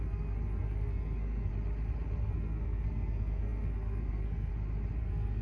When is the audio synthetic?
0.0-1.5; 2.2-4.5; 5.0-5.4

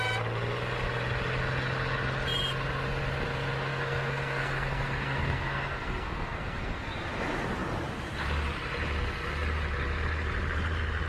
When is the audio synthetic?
3.7-6.9

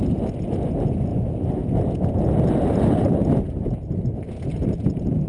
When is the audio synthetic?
none

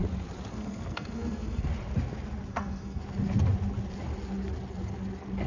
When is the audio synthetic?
0.5-1.7; 2.5-3.0